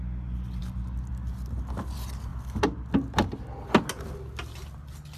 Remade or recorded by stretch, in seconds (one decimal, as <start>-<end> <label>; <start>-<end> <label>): 0.0-5.2 recorded